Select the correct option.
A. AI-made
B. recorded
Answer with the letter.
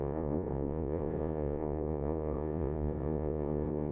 A